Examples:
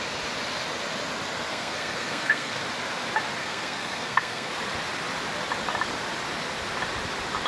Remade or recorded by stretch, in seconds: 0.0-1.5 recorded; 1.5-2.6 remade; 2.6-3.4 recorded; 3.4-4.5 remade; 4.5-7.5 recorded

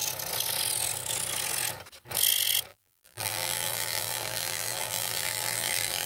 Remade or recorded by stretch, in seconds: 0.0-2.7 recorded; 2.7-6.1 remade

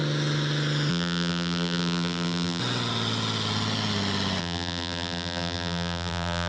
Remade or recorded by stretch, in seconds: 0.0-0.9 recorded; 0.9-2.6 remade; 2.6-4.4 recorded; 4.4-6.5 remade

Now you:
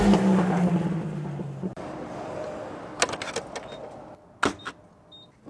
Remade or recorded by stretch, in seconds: 0.0-5.5 recorded

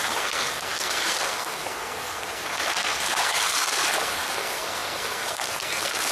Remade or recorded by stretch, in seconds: 0.0-6.1 remade